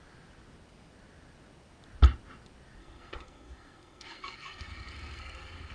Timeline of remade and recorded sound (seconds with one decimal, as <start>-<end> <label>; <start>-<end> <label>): 0.0-2.8 recorded; 2.8-5.7 remade